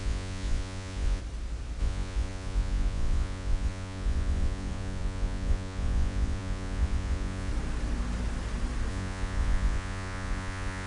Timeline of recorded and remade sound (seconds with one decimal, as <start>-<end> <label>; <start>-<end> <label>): 0.0-1.2 remade; 1.2-1.8 recorded; 1.8-7.5 remade; 7.5-8.9 recorded; 8.9-10.9 remade